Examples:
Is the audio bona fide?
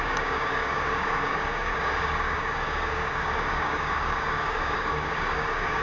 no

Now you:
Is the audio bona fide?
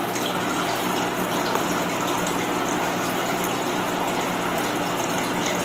yes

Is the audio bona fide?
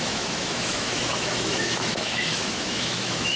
no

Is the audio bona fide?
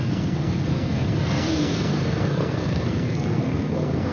no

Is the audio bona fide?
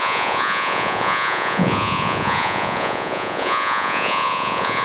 no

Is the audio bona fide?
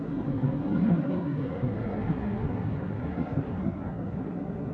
no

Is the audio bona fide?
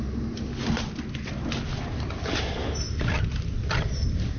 yes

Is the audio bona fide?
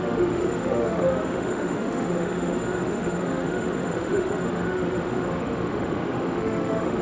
no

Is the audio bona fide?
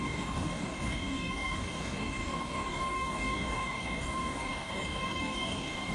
no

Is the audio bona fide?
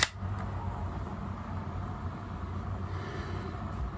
yes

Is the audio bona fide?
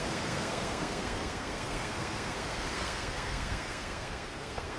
no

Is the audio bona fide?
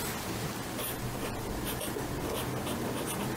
yes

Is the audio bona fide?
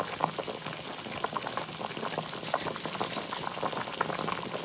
yes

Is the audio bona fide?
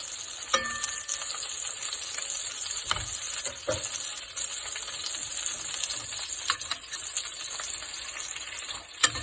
yes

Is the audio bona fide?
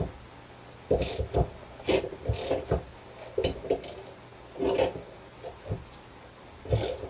yes